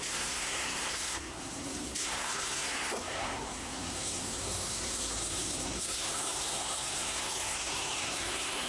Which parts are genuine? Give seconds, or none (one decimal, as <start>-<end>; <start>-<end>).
none